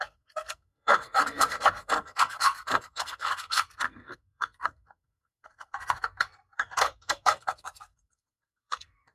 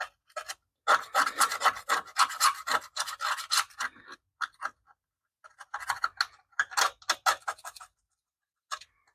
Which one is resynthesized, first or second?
first